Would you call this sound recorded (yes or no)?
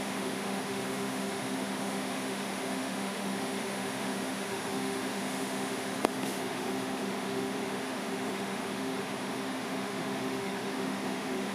no